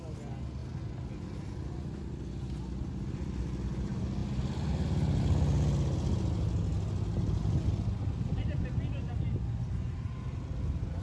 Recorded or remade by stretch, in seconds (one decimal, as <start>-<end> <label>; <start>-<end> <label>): 0.0-11.0 recorded